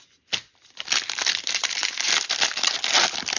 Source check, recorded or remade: recorded